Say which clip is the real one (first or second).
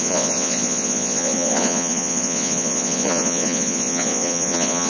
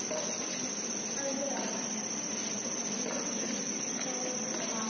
second